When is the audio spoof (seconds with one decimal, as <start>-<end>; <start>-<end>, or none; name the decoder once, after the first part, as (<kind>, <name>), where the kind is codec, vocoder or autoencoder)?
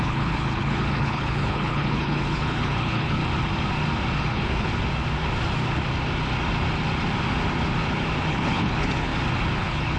0.0-3.2 (codec, HILCodec); 4.2-4.7; 8.3-9.1; 9.6-10.0